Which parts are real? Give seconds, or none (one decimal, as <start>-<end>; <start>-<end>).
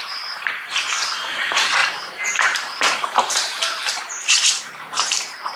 none